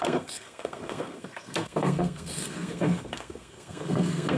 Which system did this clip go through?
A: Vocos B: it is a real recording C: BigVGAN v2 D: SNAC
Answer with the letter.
D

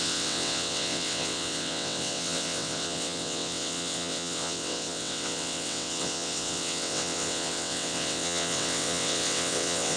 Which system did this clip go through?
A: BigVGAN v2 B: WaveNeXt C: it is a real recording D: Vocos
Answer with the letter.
B